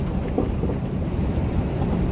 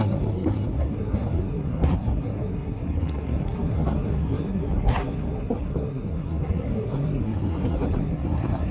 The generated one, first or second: second